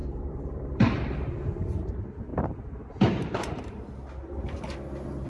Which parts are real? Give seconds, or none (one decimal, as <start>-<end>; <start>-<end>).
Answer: 1.9-2.3; 3.9-5.3